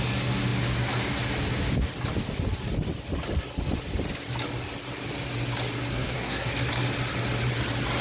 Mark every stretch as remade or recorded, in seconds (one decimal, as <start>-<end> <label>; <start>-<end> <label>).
0.0-5.9 recorded; 5.9-6.5 remade; 6.5-8.0 recorded